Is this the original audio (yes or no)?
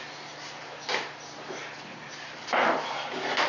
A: yes